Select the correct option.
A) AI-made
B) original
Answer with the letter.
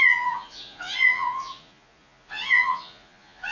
A